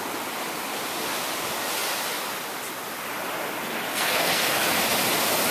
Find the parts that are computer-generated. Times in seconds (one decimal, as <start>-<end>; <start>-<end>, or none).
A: 3.9-4.8